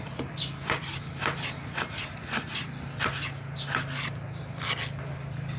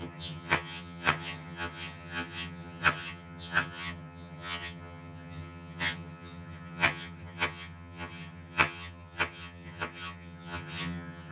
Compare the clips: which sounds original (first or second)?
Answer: first